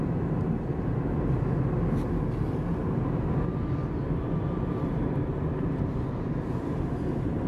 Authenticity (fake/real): real